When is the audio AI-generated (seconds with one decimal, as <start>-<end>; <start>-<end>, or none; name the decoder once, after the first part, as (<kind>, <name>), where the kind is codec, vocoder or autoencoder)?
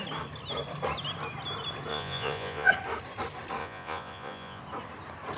1.9-2.7 (vocoder, Vocos); 3.6-4.6